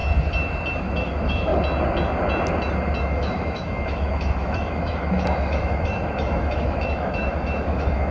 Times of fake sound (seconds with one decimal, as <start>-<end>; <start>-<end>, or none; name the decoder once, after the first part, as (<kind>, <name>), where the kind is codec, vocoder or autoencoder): 0.8-1.5 (autoencoder, DAC-VAE); 3.0-8.1